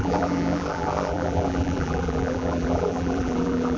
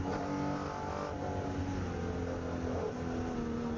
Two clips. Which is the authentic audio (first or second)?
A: second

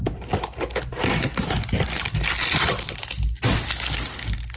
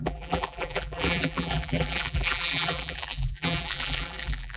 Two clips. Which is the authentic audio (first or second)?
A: first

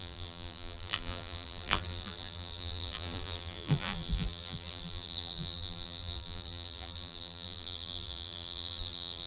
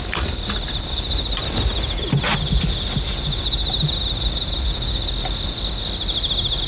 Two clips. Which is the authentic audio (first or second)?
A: second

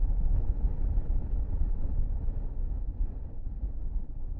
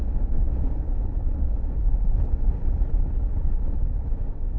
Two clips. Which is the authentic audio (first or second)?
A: second